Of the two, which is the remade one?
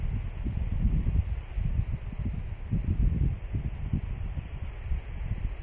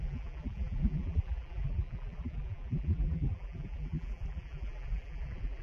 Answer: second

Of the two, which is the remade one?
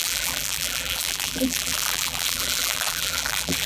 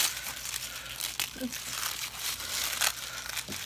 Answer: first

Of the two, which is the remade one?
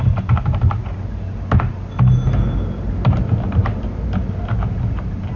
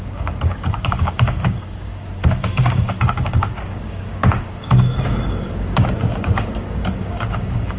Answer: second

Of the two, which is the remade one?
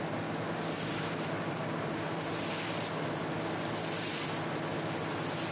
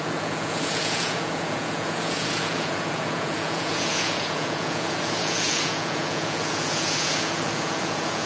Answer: second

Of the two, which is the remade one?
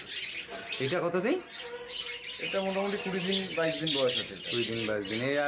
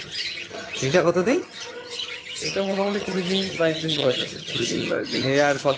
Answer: second